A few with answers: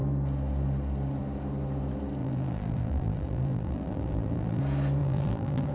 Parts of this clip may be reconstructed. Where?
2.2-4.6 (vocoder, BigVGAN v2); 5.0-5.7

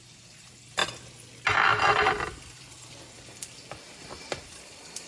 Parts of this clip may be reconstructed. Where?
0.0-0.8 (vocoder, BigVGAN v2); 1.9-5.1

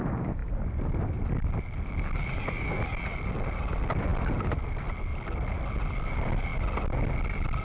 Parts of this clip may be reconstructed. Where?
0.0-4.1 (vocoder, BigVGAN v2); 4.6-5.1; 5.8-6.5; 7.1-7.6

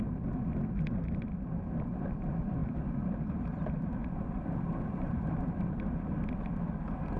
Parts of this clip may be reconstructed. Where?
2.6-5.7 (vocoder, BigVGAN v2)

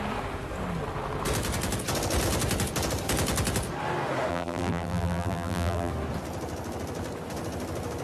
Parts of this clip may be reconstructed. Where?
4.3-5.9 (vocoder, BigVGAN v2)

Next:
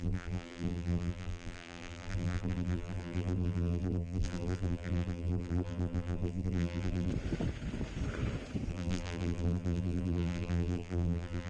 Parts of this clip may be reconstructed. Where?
0.0-7.1 (vocoder, BigVGAN v2); 8.7-11.5